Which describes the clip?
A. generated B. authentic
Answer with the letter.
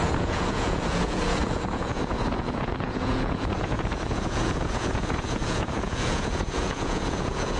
A